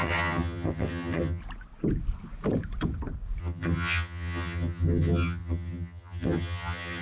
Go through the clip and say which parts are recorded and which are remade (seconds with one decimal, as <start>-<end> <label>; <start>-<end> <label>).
0.0-1.4 remade; 1.4-3.4 recorded; 3.4-7.0 remade